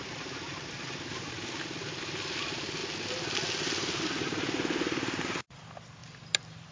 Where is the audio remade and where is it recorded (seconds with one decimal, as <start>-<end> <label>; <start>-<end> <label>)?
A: 0.0-2.8 remade; 2.8-3.6 recorded; 3.6-6.0 remade; 6.0-6.7 recorded